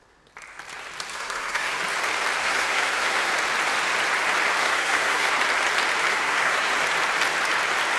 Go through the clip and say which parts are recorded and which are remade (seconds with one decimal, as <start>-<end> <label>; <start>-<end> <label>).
0.0-1.1 recorded; 1.1-1.8 remade; 1.8-2.4 recorded; 2.4-3.3 remade; 3.3-4.6 recorded; 4.6-5.3 remade; 5.3-6.1 recorded; 6.1-6.7 remade; 6.7-8.0 recorded